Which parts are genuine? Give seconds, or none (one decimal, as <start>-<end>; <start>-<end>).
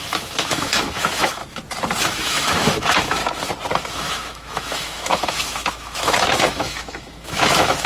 1.4-2.0; 3.2-3.9